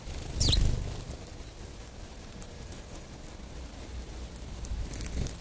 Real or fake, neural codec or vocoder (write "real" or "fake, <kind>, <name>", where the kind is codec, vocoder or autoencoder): real